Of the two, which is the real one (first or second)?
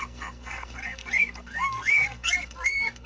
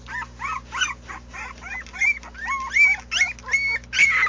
second